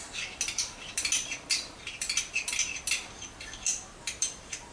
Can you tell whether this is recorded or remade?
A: recorded